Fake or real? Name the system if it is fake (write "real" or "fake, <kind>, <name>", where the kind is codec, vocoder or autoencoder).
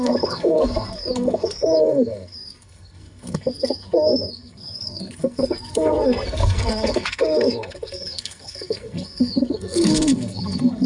fake, codec, SNAC